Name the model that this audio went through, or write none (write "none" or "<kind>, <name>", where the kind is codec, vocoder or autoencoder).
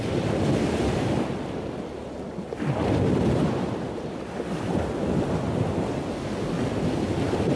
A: none